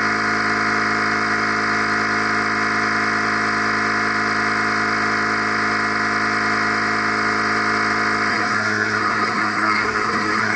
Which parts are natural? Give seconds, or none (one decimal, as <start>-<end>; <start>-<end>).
0.0-8.3